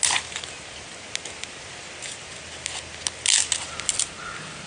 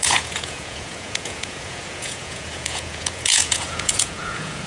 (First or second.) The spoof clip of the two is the second